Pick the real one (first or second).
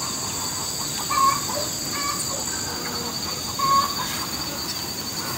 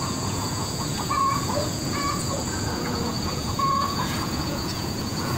first